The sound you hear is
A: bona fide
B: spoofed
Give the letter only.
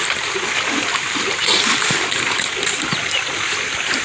A